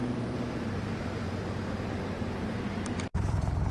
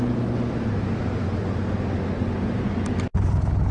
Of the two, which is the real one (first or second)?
second